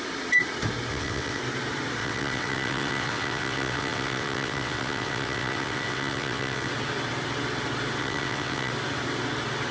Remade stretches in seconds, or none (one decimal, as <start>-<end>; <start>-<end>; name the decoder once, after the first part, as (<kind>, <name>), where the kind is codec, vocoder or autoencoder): 0.9-1.4 (vocoder, WaveNeXt); 2.0-6.7; 8.0-8.7